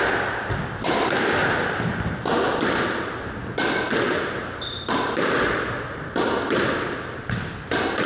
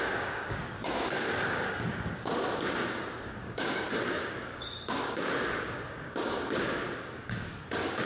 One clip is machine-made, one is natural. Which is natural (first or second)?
first